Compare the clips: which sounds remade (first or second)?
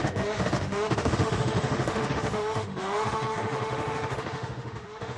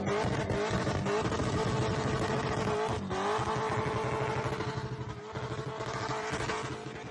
first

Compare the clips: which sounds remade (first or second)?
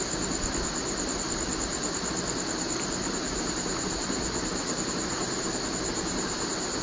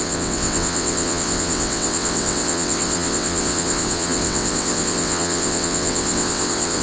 second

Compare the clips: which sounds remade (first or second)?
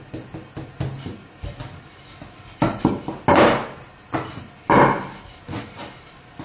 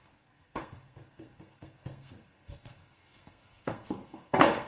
second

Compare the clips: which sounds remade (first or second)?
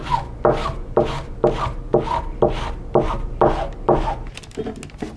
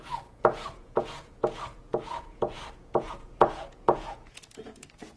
second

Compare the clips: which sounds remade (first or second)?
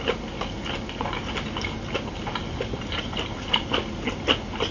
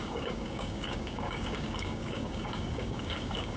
second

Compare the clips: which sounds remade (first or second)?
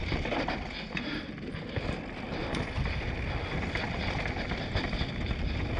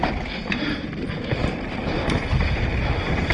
second